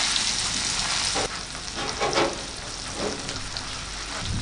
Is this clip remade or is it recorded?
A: recorded